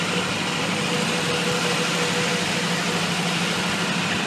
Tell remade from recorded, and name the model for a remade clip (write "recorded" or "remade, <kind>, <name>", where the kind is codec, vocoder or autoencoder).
recorded